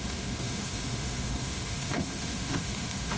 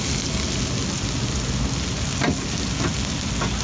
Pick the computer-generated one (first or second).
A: first